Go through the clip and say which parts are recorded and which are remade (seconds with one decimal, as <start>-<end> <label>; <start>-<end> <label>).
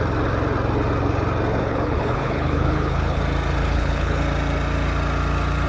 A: 0.0-1.6 recorded; 1.6-3.2 remade; 3.2-3.6 recorded; 3.6-4.2 remade; 4.2-5.7 recorded